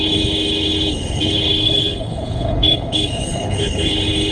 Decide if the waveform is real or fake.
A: fake